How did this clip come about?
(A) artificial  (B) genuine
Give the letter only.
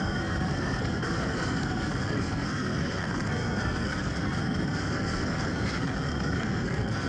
A